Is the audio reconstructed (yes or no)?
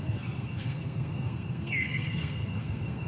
yes